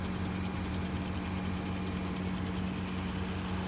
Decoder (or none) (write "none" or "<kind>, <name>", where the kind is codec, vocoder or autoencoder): none